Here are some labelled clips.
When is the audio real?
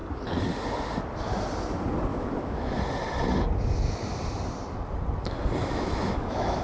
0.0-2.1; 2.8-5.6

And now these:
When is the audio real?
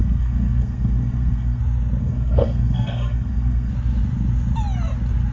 1.6-2.0; 3.7-5.3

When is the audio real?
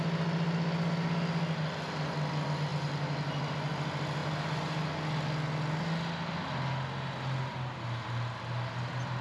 0.0-4.2; 4.8-9.2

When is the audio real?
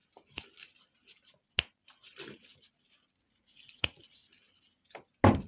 0.0-3.2; 4.2-5.5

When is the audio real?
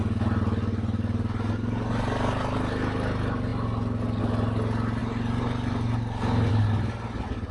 0.0-7.5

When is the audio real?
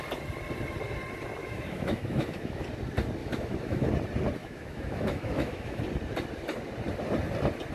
0.0-1.4; 2.6-3.2; 3.9-4.4; 5.8-7.7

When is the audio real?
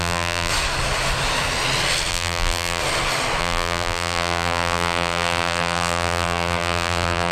0.5-2.1; 2.8-3.4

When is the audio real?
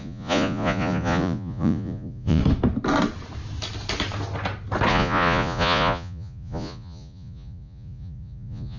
2.4-4.9